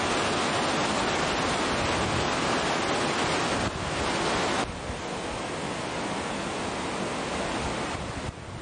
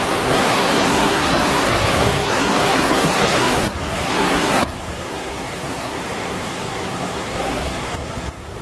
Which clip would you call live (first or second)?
first